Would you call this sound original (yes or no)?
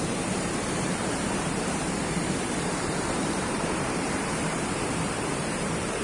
no